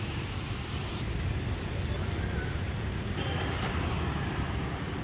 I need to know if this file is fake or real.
real